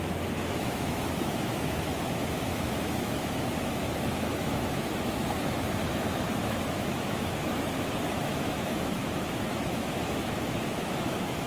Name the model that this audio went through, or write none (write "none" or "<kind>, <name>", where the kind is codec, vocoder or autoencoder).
autoencoder, DAC-VAE